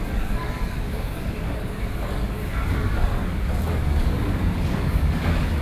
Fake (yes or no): yes